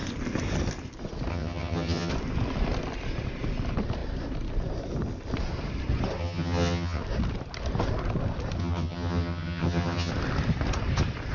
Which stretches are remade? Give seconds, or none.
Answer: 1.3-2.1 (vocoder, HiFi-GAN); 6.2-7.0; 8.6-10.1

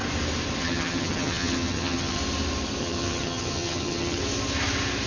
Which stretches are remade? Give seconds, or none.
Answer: 0.6-2.2 (vocoder, HiFi-GAN); 2.8-4.2